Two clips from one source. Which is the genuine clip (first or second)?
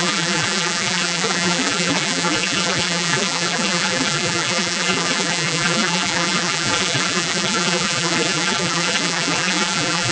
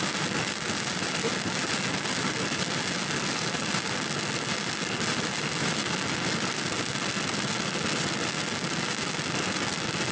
second